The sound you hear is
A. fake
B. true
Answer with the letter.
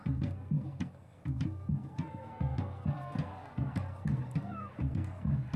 A